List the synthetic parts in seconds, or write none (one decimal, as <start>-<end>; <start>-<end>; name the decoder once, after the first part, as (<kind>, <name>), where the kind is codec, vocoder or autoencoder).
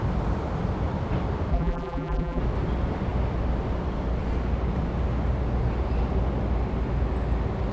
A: 1.5-2.4 (vocoder, BigVGAN v2)